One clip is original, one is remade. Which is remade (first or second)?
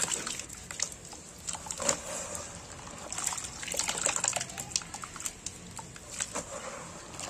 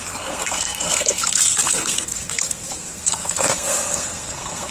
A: second